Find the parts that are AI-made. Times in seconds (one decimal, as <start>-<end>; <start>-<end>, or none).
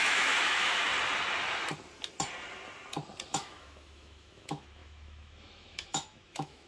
0.0-0.9; 3.3-6.7